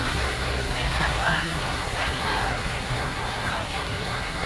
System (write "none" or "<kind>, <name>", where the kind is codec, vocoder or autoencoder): codec, SNAC